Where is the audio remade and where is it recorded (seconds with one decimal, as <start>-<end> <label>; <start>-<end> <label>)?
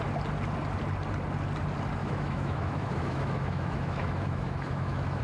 0.0-2.0 recorded; 2.0-5.2 remade